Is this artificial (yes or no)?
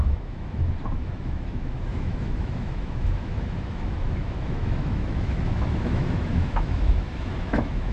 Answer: yes